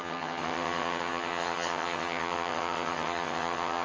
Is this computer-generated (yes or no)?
yes